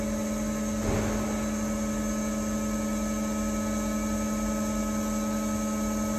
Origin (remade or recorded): recorded